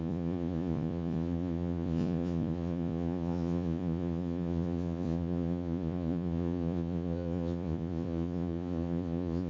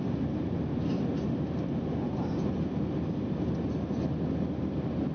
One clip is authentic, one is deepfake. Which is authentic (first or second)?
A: second